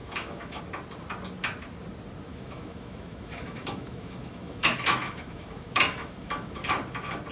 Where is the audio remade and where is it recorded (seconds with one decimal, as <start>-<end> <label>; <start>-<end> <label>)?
0.0-0.6 remade; 0.6-2.3 recorded; 2.3-6.7 remade; 6.7-7.3 recorded